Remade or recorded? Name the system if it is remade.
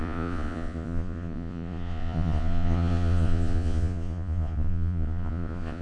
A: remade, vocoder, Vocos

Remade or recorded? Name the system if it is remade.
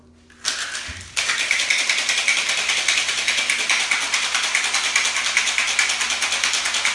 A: recorded